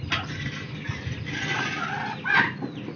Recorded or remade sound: recorded